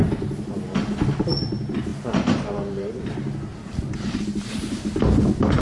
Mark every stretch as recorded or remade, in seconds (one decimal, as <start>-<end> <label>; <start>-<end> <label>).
0.0-1.9 recorded; 1.9-3.0 remade; 3.0-3.5 recorded; 3.5-5.0 remade; 5.0-5.6 recorded